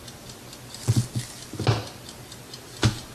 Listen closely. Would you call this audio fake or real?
real